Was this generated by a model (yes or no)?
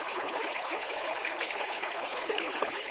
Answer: yes